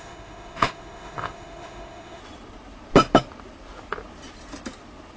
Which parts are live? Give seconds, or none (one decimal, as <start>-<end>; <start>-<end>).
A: 2.2-5.2

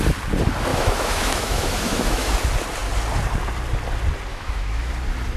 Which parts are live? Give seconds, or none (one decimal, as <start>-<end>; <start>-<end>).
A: 0.0-0.7; 2.3-4.3; 4.9-5.4

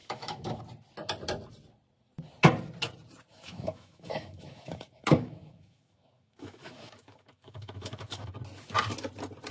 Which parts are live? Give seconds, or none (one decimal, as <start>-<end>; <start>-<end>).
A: 0.6-3.3; 8.3-9.5

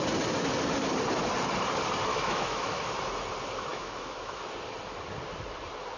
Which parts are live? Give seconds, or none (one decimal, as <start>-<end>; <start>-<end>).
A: 0.0-2.1; 2.9-3.7; 4.4-6.0

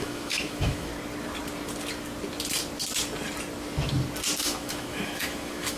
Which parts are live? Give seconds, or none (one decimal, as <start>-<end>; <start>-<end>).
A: 0.9-4.4